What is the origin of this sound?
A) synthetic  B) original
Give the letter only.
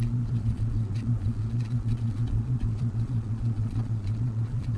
A